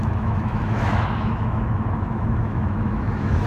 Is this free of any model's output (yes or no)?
no